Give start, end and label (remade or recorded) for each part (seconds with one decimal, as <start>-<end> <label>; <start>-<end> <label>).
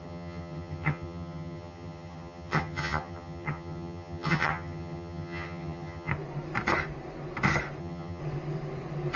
0.0-6.1 remade; 6.1-7.8 recorded; 7.8-8.2 remade; 8.2-9.2 recorded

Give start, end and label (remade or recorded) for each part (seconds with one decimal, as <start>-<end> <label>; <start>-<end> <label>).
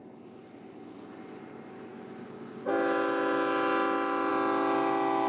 0.0-5.3 recorded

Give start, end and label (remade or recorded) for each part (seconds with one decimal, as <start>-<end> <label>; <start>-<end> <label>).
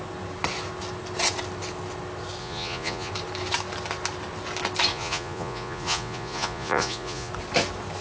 0.0-2.4 recorded; 2.4-3.1 remade; 3.1-4.9 recorded; 4.9-7.3 remade; 7.3-8.0 recorded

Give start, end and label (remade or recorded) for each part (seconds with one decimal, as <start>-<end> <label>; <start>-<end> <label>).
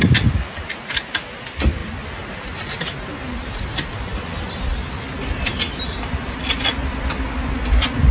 0.0-8.1 recorded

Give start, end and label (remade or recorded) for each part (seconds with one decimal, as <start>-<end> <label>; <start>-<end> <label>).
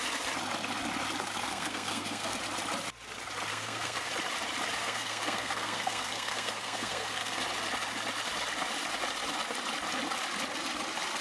0.0-1.4 recorded; 1.4-2.4 remade; 2.4-3.5 recorded; 3.5-4.1 remade; 4.1-4.8 recorded; 4.8-7.4 remade; 7.4-11.2 recorded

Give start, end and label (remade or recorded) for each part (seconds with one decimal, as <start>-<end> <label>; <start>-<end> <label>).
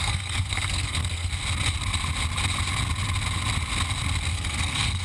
0.0-1.3 remade; 1.3-4.3 recorded; 4.3-5.0 remade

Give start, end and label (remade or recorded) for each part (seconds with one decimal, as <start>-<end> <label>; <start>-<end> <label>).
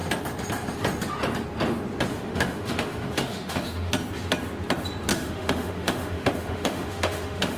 0.0-2.1 recorded; 2.1-3.9 remade; 3.9-5.1 recorded; 5.1-7.6 remade